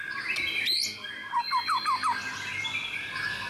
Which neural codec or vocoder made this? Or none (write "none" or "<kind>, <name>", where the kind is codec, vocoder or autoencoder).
none